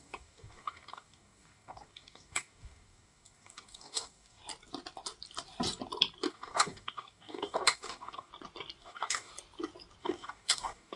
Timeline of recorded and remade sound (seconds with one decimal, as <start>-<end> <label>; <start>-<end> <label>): 0.0-4.4 remade; 4.4-6.3 recorded; 6.3-8.3 remade; 8.3-8.8 recorded; 8.8-9.3 remade; 9.3-10.0 recorded; 10.0-11.0 remade